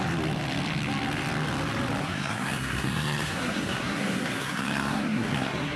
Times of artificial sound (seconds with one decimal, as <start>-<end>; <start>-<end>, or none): 2.0-5.8